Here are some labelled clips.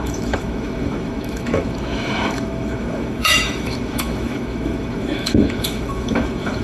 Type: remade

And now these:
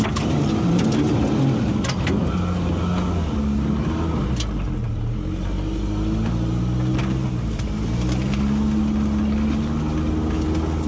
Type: recorded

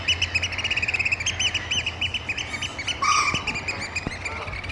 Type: recorded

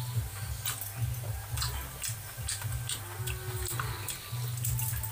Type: recorded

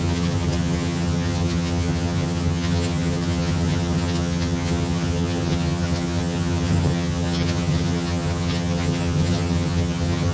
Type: remade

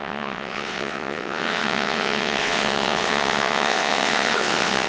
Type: remade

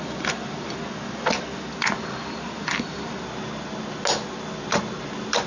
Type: recorded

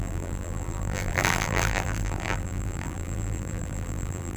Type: remade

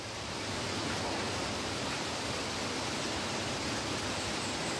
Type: remade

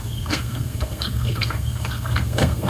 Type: remade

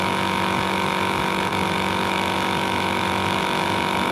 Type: remade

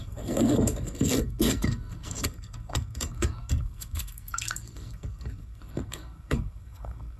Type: remade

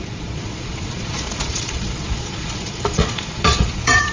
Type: remade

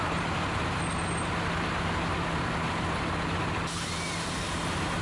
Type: recorded